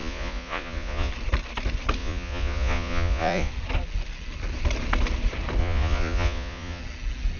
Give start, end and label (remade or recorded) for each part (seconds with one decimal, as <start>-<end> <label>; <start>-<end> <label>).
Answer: 0.0-1.1 remade; 1.1-2.0 recorded; 2.0-3.5 remade; 3.5-5.6 recorded; 5.6-6.8 remade; 6.8-7.4 recorded